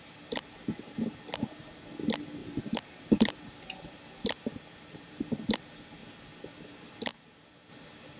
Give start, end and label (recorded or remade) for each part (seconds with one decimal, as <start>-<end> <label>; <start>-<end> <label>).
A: 0.0-6.0 remade; 6.0-6.6 recorded; 6.6-8.2 remade